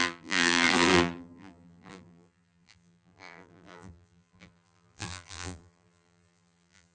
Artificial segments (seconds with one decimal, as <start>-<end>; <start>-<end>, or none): 0.0-6.9